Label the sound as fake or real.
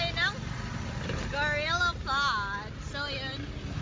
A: real